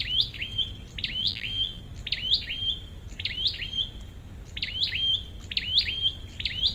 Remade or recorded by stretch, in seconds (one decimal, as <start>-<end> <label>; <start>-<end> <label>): 0.0-1.2 recorded; 1.2-1.8 remade; 1.8-6.7 recorded